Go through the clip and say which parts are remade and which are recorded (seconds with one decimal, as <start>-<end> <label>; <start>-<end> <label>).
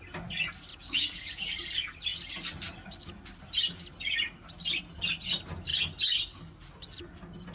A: 0.0-0.7 recorded; 0.7-1.2 remade; 1.2-7.5 recorded